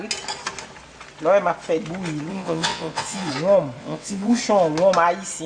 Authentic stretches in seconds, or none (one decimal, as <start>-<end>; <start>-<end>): 0.0-2.3; 3.3-3.8; 4.4-5.5